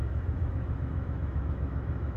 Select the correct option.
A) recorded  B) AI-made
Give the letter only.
B